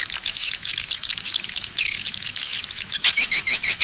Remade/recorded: remade